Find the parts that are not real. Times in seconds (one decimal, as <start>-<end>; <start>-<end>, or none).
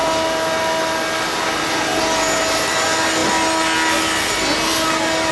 none